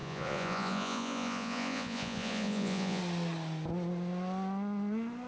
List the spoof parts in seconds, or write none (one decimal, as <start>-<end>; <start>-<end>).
0.0-3.0